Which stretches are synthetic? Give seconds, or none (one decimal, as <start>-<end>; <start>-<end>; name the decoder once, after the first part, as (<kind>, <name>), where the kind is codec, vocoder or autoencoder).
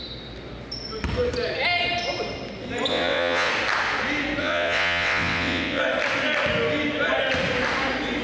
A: 2.9-3.5 (vocoder, WaveNeXt); 4.4-5.8